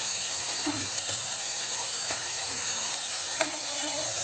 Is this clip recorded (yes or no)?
no